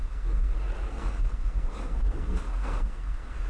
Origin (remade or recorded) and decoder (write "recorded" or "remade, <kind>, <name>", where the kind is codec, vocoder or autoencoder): remade, codec, SNAC